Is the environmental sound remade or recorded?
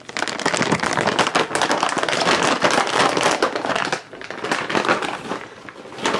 recorded